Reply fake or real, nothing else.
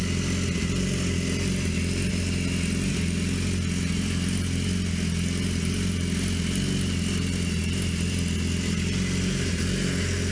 real